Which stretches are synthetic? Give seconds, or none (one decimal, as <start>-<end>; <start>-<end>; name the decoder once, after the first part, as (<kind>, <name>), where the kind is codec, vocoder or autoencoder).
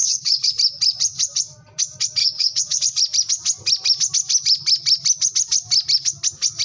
0.0-0.5 (codec, DAC); 2.2-2.8